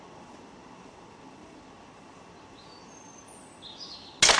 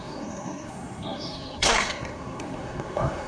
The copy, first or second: second